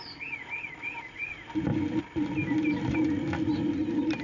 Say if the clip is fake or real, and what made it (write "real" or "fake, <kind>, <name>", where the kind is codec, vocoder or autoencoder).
real